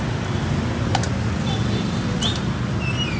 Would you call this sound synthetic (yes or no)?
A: no